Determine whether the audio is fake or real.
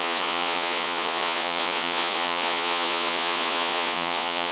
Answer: fake